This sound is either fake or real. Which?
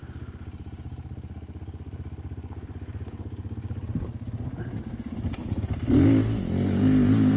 real